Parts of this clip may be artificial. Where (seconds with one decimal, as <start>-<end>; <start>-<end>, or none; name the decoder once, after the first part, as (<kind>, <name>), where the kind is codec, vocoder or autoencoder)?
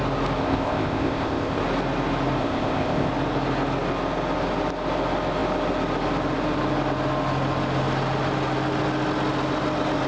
0.4-1.6 (codec, ZipCodec); 2.4-3.1